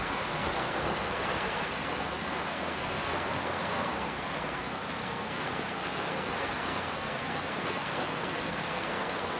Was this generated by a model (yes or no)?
yes